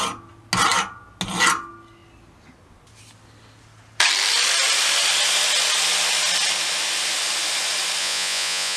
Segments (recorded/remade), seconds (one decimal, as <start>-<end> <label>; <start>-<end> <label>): 0.0-8.0 recorded; 8.0-8.8 remade